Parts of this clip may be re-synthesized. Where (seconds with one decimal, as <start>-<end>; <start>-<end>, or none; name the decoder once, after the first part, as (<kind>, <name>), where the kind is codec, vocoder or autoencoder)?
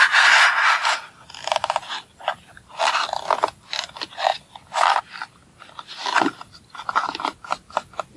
6.0-6.7 (vocoder, BigVGAN v2)